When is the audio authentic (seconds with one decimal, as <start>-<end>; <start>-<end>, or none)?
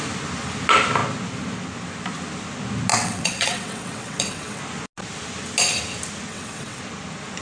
0.0-2.9; 4.6-6.3; 6.8-7.4